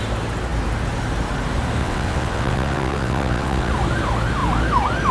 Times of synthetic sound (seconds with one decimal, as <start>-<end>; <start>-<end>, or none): 1.8-3.7